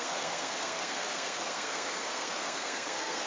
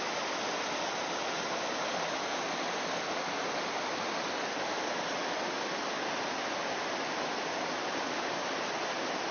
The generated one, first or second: first